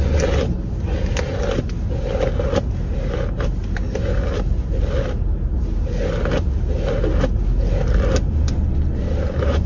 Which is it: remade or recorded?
recorded